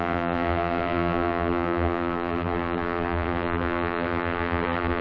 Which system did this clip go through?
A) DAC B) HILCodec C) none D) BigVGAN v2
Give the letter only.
D